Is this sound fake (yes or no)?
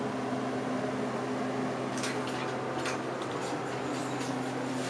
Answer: no